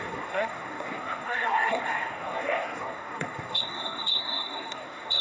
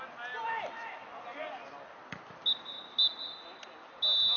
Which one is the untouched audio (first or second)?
second